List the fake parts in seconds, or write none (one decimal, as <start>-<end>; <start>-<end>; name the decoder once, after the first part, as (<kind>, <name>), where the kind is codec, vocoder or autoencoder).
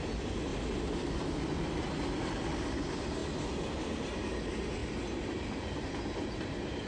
none